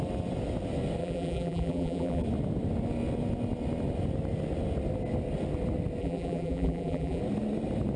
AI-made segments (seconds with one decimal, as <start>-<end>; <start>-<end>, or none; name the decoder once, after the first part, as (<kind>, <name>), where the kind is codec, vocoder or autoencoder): 1.0-2.2 (vocoder, BigVGAN v2); 6.0-7.2